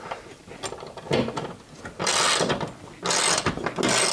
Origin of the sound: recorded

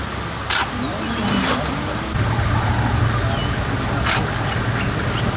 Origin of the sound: recorded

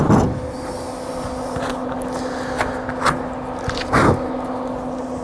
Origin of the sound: recorded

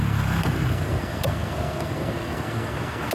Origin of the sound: remade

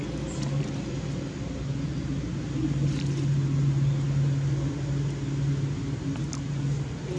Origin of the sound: recorded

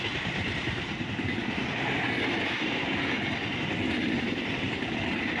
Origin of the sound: recorded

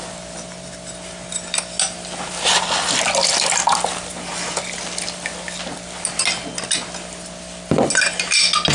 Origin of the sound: recorded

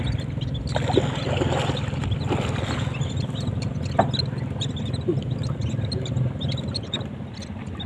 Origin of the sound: recorded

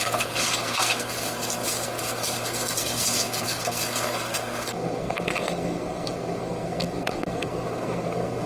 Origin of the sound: remade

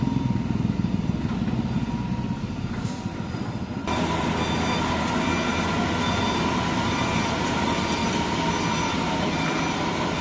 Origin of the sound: recorded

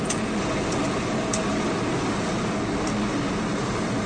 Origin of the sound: recorded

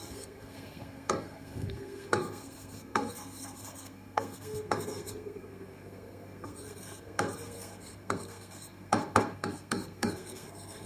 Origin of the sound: remade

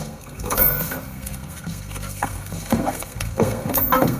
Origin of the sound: remade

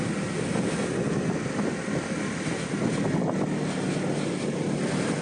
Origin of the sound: recorded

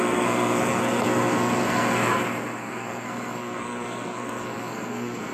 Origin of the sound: remade